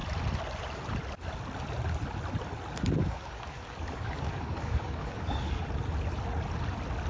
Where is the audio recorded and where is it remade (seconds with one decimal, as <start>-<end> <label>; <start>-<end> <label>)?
0.0-3.0 recorded; 3.0-5.6 remade; 5.6-7.1 recorded